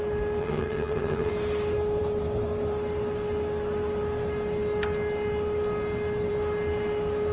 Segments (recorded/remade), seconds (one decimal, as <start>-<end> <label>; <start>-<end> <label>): 0.0-0.4 recorded; 0.4-1.3 remade; 1.3-7.3 recorded